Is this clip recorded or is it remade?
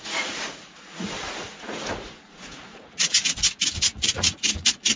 remade